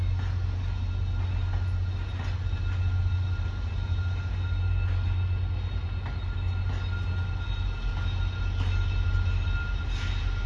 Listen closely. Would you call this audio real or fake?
real